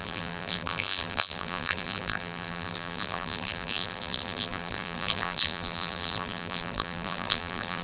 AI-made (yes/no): yes